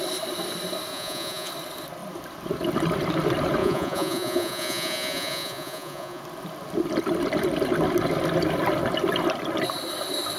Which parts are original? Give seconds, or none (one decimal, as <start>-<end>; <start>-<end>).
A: 0.0-0.9; 1.5-3.6; 6.2-10.4